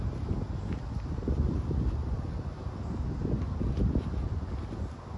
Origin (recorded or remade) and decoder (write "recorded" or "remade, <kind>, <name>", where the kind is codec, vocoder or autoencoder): recorded